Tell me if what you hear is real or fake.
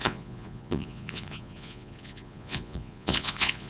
fake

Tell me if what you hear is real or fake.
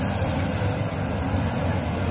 real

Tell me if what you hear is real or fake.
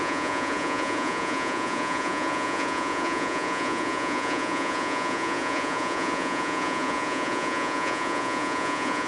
fake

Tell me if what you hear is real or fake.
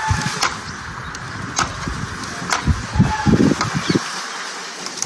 real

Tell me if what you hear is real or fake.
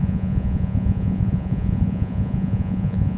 fake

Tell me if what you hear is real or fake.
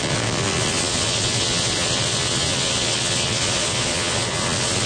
fake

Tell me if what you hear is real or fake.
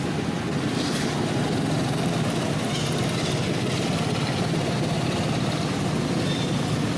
real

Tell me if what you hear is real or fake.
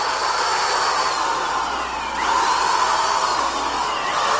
real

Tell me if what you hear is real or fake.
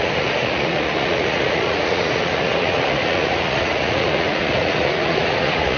fake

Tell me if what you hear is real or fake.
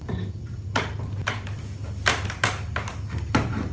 real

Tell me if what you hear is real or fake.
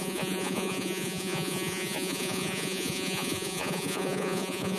fake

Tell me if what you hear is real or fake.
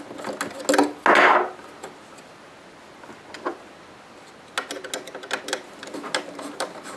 real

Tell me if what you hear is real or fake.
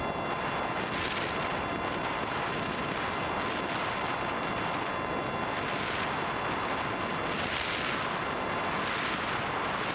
real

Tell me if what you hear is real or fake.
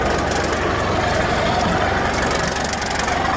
real